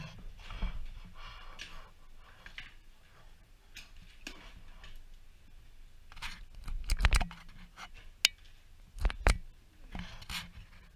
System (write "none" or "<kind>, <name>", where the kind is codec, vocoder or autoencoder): none